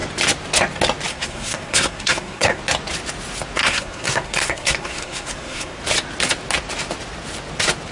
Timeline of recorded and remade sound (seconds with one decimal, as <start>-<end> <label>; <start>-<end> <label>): 0.0-1.1 recorded; 1.1-2.6 remade; 2.6-3.6 recorded; 3.6-5.8 remade; 5.8-7.9 recorded